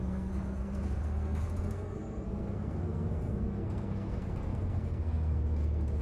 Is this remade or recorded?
remade